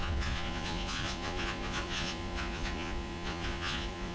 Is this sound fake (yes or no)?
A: yes